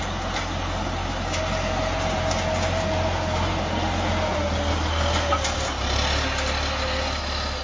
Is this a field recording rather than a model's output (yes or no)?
yes